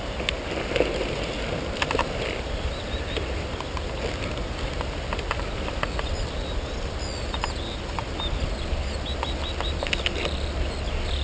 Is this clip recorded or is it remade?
recorded